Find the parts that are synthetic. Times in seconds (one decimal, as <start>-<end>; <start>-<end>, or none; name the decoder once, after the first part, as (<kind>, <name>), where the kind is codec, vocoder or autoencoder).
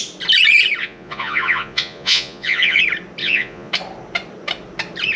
0.8-2.8 (vocoder, Vocos); 3.2-3.7